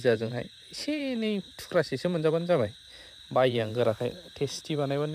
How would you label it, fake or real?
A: fake